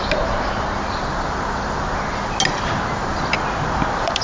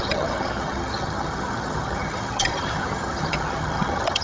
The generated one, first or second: second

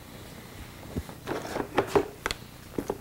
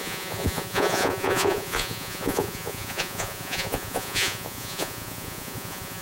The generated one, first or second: second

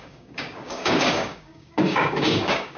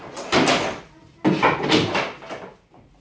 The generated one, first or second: first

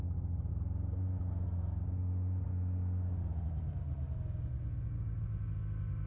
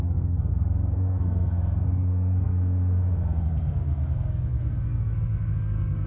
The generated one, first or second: second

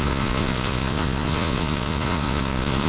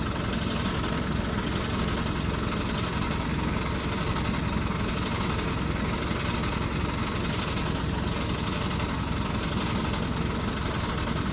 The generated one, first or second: first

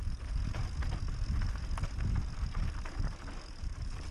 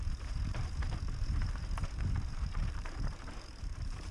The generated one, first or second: second